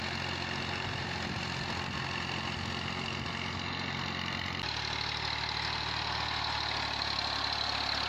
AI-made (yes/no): no